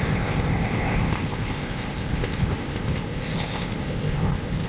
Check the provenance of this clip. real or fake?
fake